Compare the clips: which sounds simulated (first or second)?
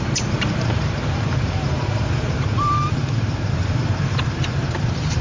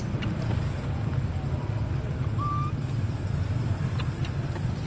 first